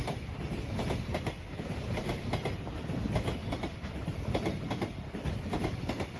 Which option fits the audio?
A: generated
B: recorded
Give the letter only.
B